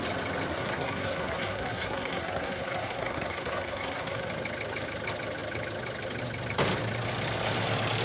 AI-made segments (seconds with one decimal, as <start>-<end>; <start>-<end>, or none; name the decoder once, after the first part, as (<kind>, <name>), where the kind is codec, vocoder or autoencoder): 0.5-4.3 (codec, SNAC)